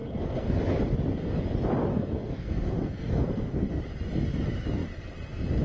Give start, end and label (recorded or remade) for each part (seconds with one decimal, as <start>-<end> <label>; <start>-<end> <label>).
0.0-0.6 remade; 0.6-1.9 recorded; 1.9-3.8 remade; 3.8-5.6 recorded